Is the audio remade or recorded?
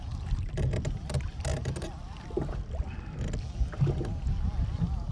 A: recorded